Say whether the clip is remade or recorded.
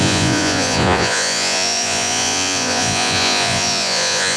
remade